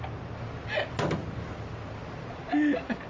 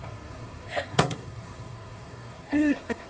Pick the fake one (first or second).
second